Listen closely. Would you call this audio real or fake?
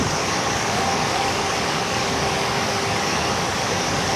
fake